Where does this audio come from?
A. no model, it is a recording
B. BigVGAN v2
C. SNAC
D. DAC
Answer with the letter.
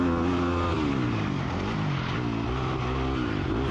A